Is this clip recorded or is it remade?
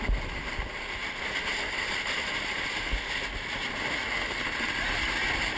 recorded